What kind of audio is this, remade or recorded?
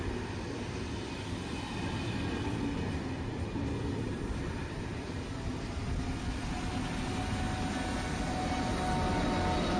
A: recorded